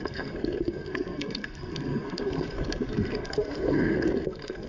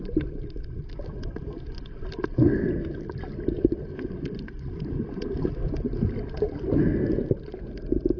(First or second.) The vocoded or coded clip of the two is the first